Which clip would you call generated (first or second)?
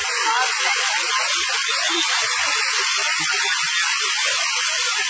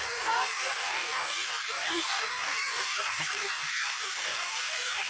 second